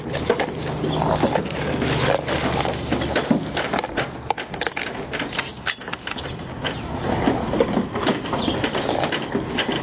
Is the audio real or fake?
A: real